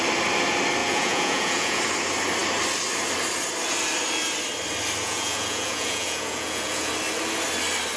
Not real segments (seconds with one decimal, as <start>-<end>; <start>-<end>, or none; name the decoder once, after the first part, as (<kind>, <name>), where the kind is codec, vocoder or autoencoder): 0.8-1.8 (vocoder, Vocos); 5.0-6.9